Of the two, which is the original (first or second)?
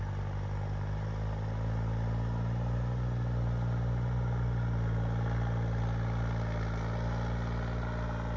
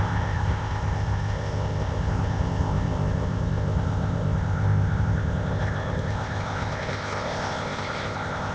first